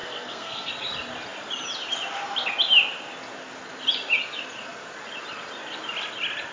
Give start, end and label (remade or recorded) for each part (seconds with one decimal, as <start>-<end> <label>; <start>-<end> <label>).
0.0-0.7 remade; 0.7-6.5 recorded